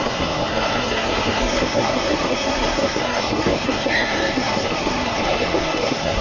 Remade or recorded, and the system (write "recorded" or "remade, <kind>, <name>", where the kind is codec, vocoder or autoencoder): remade, codec, SNAC